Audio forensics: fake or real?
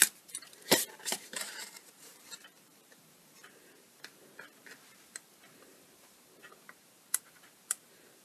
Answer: fake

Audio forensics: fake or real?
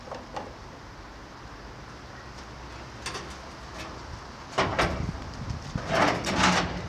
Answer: real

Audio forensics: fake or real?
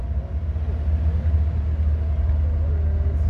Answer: real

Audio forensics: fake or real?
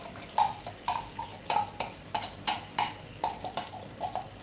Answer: real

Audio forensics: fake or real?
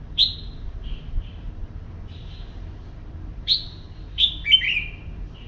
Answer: fake